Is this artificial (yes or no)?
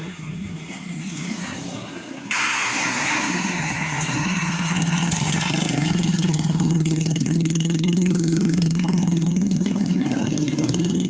yes